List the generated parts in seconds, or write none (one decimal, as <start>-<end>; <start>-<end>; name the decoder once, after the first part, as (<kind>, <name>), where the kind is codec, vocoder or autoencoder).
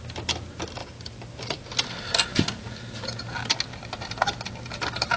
0.8-1.6 (vocoder, BigVGAN v2)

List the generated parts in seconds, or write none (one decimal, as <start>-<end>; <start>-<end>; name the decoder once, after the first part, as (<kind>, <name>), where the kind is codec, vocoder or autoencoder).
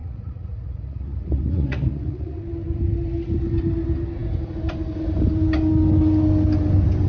0.0-2.4 (vocoder, Vocos)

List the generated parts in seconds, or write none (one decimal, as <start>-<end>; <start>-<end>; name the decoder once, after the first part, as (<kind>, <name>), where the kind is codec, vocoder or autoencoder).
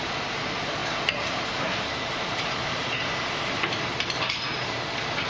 0.0-5.3 (vocoder, BigVGAN v2)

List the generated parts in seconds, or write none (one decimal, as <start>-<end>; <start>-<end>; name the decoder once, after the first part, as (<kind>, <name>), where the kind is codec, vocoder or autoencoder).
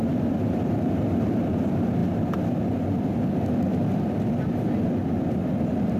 none